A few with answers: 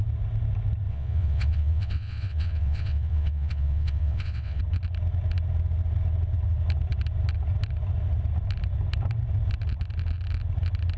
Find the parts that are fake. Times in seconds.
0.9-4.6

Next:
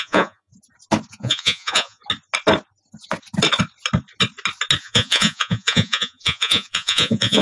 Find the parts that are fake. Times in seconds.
0.0-0.5; 1.1-2.0; 4.8-7.4

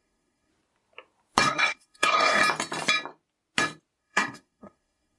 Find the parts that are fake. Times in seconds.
0.0-0.5; 1.4-2.4; 4.0-5.2

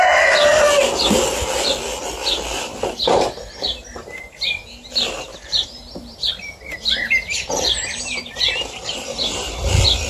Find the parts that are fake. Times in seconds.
2.5-3.8; 5.3-6.3; 7.0-9.5

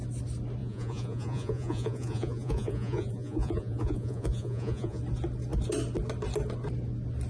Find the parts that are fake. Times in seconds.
0.6-5.0

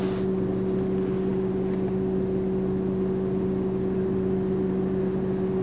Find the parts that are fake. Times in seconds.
none